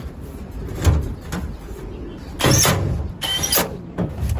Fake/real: real